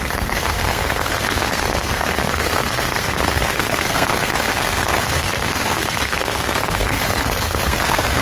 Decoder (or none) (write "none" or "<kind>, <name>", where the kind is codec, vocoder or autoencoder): codec, SNAC